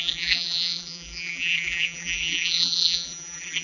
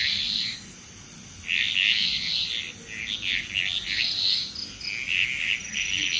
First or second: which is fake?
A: first